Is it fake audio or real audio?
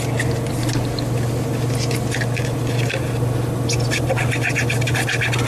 real